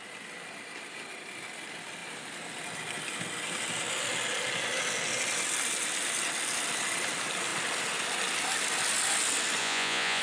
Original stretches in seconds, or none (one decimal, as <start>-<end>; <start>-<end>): 0.0-9.6